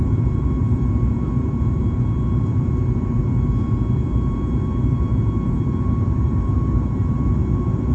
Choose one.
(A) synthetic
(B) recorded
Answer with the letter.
A